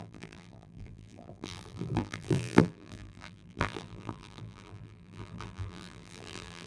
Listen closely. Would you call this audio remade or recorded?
remade